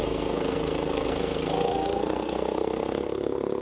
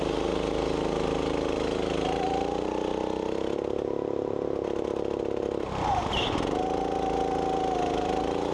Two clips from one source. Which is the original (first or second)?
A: second